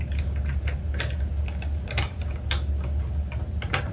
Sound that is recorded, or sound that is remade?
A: recorded